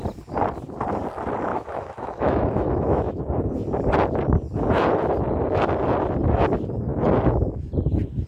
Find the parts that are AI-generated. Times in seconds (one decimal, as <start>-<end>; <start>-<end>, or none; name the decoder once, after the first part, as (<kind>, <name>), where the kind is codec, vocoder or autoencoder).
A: 1.5-3.2 (autoencoder, DAC-VAE)